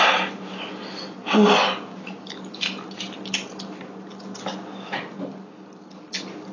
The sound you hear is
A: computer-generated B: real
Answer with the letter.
B